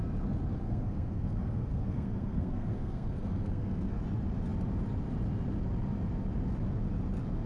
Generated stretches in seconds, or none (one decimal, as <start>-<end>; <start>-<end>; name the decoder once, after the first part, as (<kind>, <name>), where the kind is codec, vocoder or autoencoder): 0.6-4.0 (codec, SNAC)